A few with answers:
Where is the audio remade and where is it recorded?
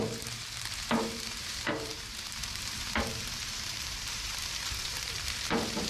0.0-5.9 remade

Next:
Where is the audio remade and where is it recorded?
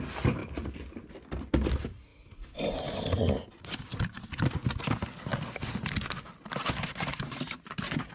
0.0-2.1 recorded; 2.1-2.9 remade; 2.9-7.1 recorded; 7.1-8.1 remade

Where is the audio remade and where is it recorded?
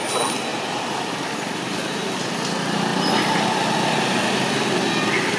0.0-0.5 recorded; 0.5-1.9 remade; 1.9-5.4 recorded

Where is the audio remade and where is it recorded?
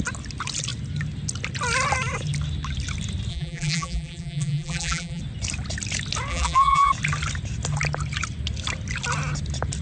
0.0-3.3 recorded; 3.3-5.2 remade; 5.2-6.3 recorded; 6.3-6.9 remade; 6.9-9.8 recorded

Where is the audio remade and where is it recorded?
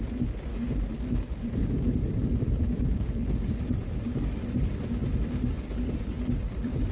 0.0-0.5 remade; 0.5-1.3 recorded; 1.3-3.2 remade; 3.2-4.3 recorded; 4.3-5.0 remade; 5.0-5.8 recorded; 5.8-6.9 remade